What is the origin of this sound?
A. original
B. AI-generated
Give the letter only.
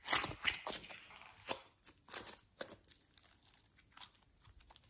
A